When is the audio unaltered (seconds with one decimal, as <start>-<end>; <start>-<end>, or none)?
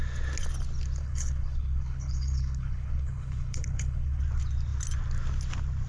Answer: 0.0-1.0; 4.2-5.9